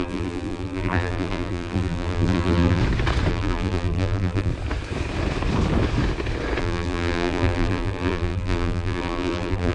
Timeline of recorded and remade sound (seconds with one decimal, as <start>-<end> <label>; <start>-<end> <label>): 0.0-2.8 remade; 2.8-3.3 recorded; 3.3-4.5 remade; 4.5-6.6 recorded; 6.6-9.7 remade